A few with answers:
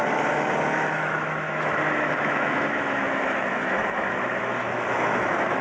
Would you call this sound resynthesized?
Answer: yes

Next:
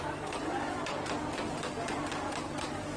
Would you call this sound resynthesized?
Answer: no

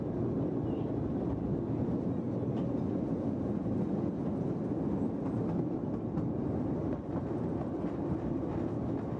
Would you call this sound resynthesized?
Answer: no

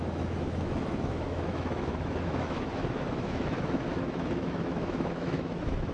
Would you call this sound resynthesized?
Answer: yes